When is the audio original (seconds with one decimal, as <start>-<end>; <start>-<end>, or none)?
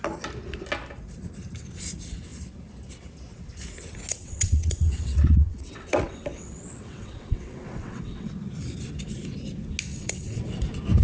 0.0-4.1; 8.3-9.9; 10.4-11.0